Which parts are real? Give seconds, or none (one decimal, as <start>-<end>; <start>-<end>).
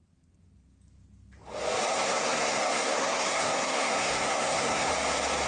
0.0-1.9; 4.9-5.5